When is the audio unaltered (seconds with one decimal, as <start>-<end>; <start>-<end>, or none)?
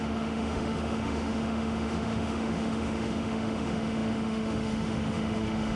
none